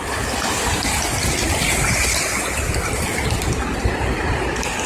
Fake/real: real